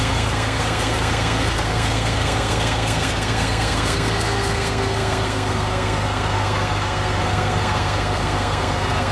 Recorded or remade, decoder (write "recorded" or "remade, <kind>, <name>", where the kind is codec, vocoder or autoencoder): remade, codec, SNAC